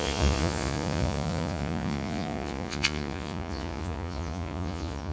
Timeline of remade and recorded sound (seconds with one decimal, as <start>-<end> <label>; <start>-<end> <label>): 0.0-5.1 remade